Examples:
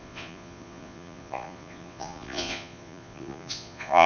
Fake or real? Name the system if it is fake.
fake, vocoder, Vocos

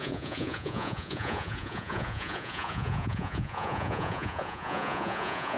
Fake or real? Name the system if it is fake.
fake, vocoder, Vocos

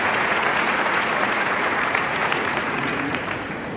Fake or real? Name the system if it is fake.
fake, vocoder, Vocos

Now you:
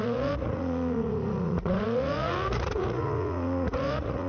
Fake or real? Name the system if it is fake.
fake, vocoder, Vocos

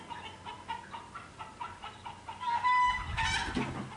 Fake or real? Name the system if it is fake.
real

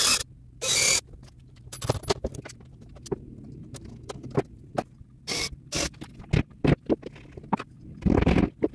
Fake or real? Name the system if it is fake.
real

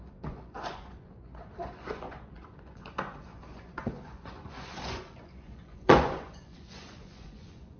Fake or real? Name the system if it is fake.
fake, vocoder, Vocos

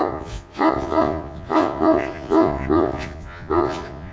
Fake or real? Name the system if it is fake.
fake, vocoder, Vocos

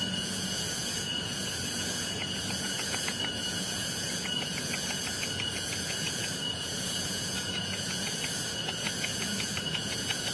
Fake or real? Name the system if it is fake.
fake, vocoder, Vocos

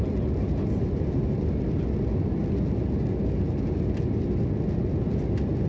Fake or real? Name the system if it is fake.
real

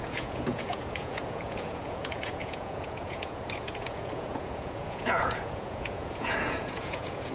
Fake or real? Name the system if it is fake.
fake, vocoder, Vocos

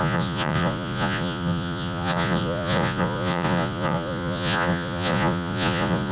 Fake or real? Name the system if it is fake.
fake, vocoder, Vocos